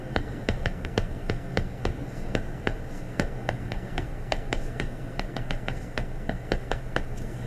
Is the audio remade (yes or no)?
yes